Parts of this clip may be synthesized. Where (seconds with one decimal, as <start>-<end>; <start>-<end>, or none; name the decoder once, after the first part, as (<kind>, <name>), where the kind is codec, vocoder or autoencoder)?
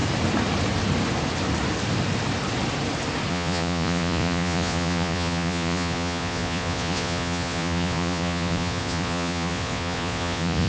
3.3-10.7 (vocoder, Vocos)